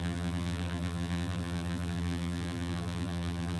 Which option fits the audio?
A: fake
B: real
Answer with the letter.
A